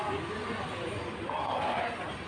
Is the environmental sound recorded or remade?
recorded